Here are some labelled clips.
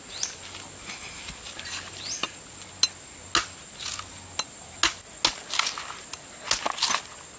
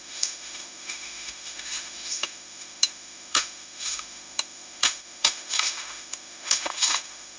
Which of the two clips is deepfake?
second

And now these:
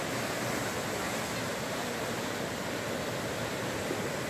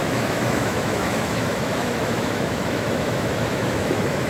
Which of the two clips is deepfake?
second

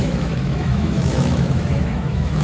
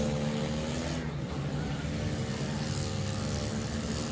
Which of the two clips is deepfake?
first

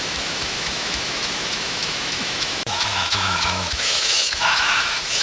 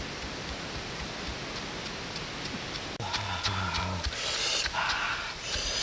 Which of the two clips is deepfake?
first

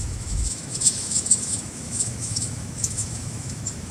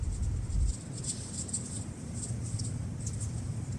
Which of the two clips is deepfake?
first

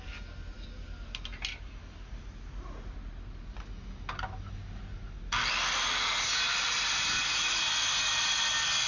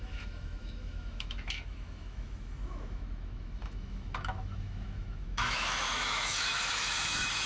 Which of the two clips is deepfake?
second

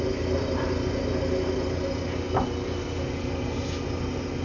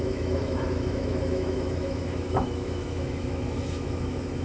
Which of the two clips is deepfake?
second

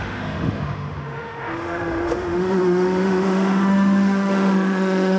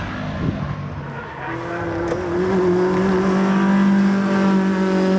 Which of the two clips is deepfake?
first